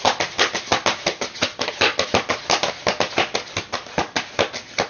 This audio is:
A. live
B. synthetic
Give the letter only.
A